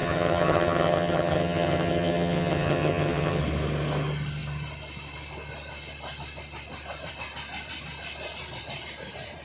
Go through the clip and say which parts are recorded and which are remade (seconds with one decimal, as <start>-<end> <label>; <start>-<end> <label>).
0.0-3.4 remade; 3.4-9.4 recorded